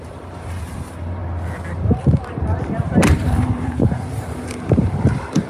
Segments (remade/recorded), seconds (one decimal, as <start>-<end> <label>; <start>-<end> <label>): 0.0-1.2 remade; 1.2-1.7 recorded; 1.7-5.5 remade